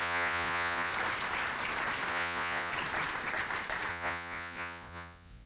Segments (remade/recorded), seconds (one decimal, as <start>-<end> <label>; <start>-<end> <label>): 0.0-0.9 remade; 0.9-2.1 recorded; 2.1-2.7 remade; 2.7-3.9 recorded; 3.9-5.5 remade